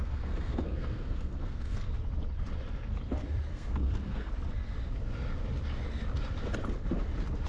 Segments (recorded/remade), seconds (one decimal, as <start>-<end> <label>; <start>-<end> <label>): 0.0-1.9 remade; 1.9-3.5 recorded; 3.5-4.3 remade; 4.3-7.5 recorded